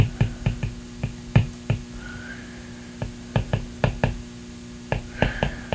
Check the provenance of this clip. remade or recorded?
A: recorded